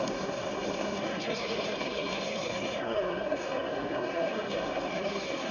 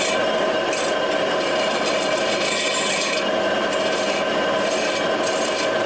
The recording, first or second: second